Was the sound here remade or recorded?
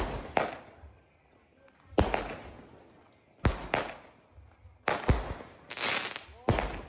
recorded